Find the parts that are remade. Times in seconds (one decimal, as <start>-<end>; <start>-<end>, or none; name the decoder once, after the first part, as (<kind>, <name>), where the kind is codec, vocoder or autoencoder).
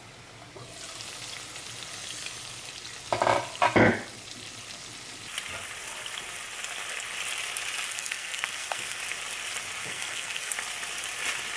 7.9-9.0 (codec, SNAC); 9.8-10.5